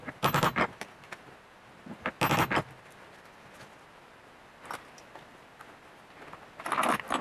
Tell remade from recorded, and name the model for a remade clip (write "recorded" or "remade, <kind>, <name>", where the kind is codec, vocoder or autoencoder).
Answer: recorded